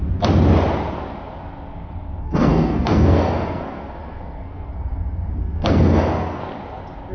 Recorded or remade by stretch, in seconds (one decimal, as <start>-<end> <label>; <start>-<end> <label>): 0.0-2.2 recorded; 2.2-6.4 remade; 6.4-7.1 recorded